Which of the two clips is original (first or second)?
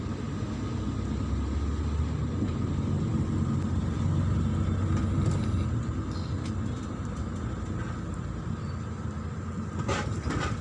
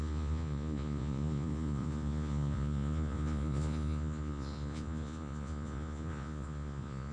first